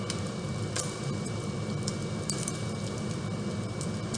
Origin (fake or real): fake